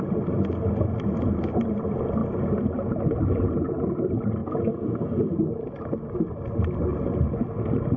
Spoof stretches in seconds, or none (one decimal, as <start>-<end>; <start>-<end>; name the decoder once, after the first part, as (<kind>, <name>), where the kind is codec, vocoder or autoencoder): none